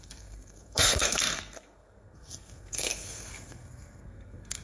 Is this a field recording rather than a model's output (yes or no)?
no